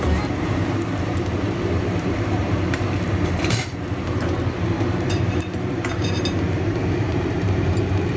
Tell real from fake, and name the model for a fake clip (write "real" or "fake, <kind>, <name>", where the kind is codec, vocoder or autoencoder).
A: fake, vocoder, BigVGAN v2